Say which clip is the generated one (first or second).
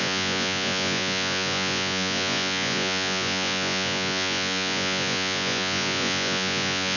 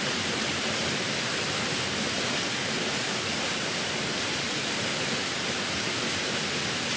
first